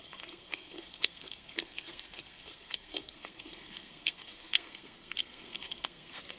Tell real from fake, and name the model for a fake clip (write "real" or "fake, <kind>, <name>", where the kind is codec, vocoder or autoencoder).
fake, codec, SNAC